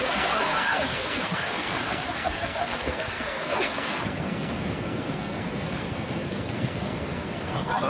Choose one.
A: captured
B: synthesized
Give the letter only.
B